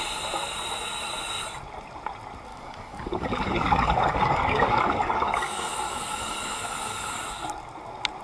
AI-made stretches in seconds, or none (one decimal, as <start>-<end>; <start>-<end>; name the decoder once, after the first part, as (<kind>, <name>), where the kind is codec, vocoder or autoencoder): 2.5-7.2 (codec, DAC)